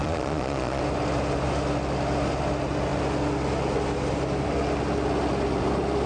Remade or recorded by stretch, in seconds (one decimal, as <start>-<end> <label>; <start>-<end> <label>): 0.0-0.8 remade; 0.8-6.1 recorded